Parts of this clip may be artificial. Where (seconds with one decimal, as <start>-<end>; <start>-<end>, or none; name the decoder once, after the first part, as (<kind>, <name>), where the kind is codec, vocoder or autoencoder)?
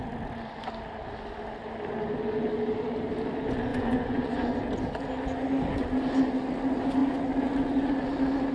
3.7-4.6 (vocoder, Vocos)